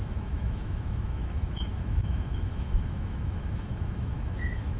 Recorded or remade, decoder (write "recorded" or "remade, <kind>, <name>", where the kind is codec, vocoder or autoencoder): remade, autoencoder, DAC-VAE